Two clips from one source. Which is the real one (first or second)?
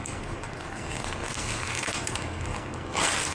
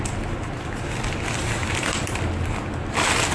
second